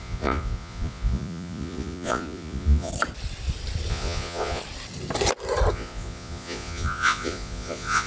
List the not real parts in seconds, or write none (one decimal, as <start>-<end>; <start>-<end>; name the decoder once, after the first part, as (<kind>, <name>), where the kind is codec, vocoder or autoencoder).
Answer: 0.0-2.9 (vocoder, Vocos); 3.9-4.6; 5.7-8.1